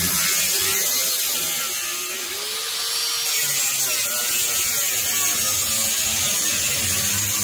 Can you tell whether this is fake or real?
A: real